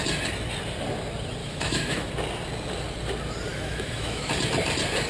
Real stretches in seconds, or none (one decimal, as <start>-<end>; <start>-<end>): 0.0-1.4; 2.1-3.5; 4.3-5.1